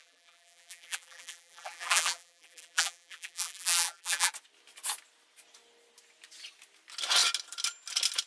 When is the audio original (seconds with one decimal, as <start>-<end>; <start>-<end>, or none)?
4.3-8.3